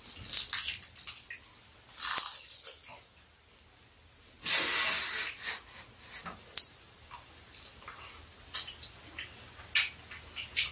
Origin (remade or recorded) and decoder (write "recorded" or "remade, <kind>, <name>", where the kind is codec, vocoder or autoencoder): recorded